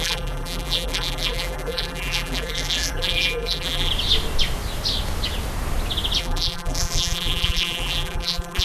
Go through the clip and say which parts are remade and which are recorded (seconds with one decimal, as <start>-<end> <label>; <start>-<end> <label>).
0.0-3.9 remade; 3.9-6.2 recorded; 6.2-8.6 remade